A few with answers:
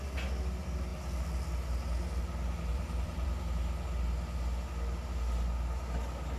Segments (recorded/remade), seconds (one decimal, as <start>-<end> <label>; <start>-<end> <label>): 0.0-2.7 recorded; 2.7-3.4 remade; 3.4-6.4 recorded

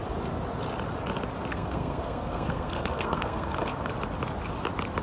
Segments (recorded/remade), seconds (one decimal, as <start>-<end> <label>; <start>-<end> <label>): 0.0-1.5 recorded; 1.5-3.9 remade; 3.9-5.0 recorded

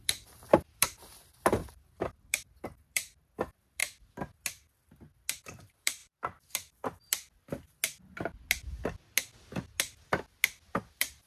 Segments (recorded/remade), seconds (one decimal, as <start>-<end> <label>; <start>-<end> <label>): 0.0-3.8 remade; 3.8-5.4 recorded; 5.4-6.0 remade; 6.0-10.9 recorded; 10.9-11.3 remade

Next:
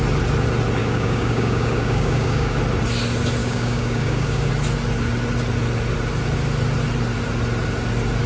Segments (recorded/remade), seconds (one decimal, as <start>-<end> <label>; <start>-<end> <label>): 0.0-0.8 recorded; 0.8-2.6 remade; 2.6-3.4 recorded; 3.4-4.5 remade; 4.5-8.3 recorded

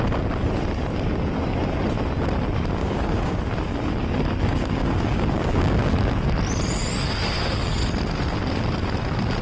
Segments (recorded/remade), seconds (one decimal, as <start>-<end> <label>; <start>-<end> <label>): 0.0-2.8 recorded; 2.8-3.4 remade; 3.4-4.4 recorded; 4.4-5.9 remade; 5.9-9.4 recorded